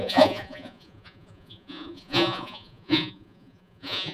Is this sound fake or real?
fake